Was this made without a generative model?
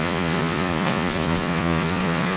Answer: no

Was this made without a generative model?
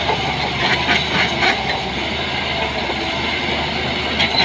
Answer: yes